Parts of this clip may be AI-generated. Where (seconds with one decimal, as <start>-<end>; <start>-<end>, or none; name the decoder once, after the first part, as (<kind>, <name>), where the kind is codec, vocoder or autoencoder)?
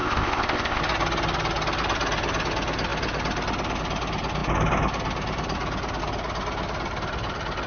0.0-0.8 (codec, ZipCodec)